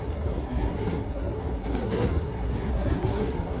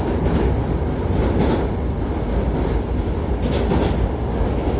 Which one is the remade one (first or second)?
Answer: first